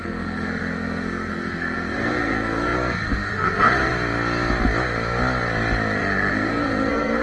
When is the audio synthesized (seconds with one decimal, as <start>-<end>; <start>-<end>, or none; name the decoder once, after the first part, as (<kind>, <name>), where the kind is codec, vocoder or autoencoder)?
0.0-3.9 (codec, SNAC); 6.0-7.2